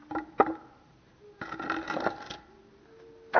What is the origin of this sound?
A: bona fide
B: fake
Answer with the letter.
A